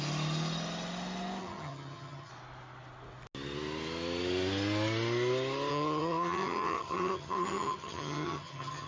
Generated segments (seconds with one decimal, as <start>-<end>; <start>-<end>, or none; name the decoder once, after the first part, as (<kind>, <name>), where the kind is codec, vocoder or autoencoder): 1.4-2.3 (vocoder, HiFi-GAN); 5.7-8.9